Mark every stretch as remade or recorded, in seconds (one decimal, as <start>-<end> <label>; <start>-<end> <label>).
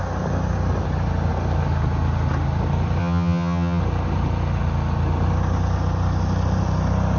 0.0-3.0 recorded; 3.0-3.8 remade; 3.8-7.2 recorded